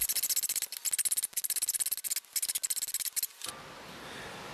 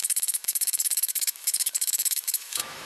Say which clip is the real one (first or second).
first